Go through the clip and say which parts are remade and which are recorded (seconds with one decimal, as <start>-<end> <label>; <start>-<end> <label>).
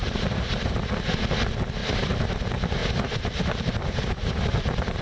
0.0-0.9 remade; 0.9-1.8 recorded; 1.8-2.4 remade; 2.4-2.8 recorded; 2.8-5.0 remade